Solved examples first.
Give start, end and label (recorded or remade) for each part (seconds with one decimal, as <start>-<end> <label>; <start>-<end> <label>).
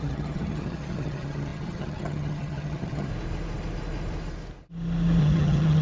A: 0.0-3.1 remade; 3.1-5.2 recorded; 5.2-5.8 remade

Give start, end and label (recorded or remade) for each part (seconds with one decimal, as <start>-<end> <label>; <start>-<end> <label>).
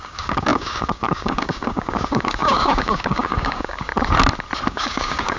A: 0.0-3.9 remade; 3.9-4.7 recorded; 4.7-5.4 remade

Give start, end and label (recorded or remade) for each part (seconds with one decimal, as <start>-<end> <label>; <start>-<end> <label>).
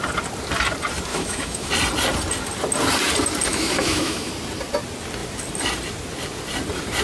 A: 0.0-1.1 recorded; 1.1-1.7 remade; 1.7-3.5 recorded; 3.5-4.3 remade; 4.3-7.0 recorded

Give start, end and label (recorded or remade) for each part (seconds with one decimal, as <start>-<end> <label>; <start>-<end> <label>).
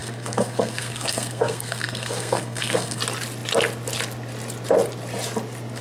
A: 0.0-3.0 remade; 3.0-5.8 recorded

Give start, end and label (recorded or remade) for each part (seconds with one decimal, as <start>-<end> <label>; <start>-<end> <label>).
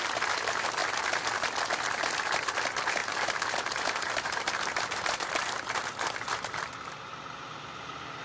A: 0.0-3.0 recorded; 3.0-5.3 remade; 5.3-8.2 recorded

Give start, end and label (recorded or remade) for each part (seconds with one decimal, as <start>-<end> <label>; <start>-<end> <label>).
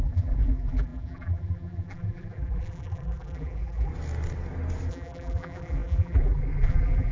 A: 0.0-3.9 remade; 3.9-4.9 recorded; 4.9-7.1 remade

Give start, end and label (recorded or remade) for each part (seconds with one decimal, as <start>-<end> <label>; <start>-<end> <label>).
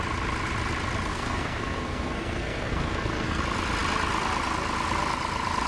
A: 0.0-1.1 recorded; 1.1-3.4 remade; 3.4-5.7 recorded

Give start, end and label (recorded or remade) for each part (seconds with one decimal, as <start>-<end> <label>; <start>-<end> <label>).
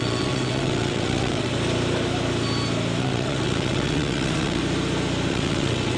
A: 0.0-1.5 remade; 1.5-3.0 recorded; 3.0-4.6 remade; 4.6-5.3 recorded; 5.3-6.0 remade